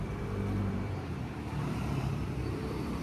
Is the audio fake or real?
fake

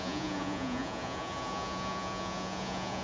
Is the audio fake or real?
fake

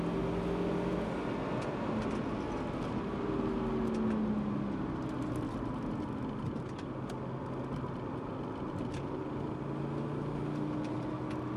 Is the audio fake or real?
real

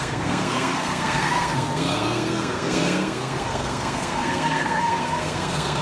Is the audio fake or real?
fake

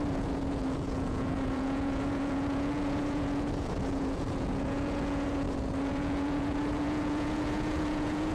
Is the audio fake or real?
fake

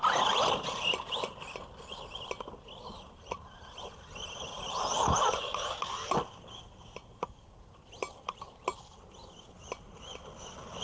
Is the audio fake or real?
real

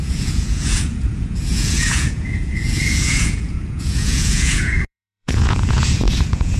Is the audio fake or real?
fake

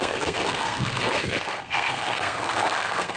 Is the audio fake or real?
fake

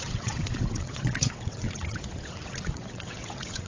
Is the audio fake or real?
fake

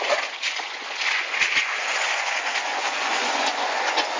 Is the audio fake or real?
fake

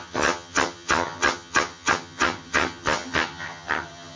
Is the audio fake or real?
fake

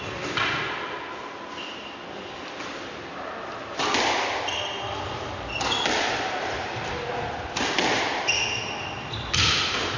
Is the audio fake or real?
real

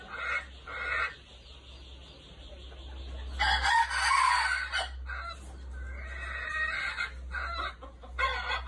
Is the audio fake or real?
real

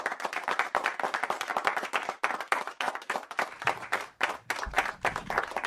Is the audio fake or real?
fake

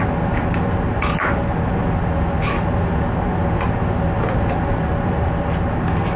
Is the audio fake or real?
real